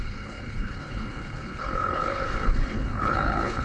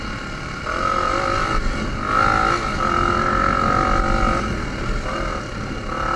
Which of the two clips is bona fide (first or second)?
second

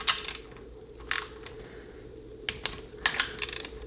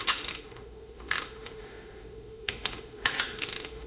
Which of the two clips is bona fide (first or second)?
first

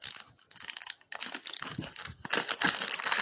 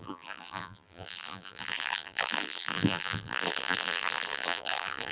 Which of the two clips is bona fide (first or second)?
first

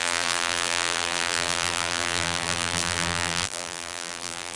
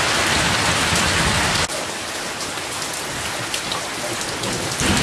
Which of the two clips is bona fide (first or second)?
second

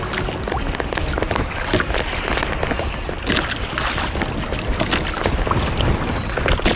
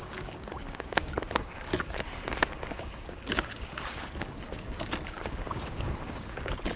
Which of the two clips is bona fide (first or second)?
first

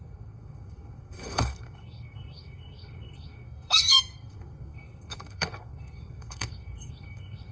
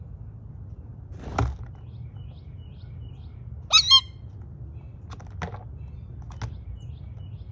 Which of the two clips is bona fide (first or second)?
second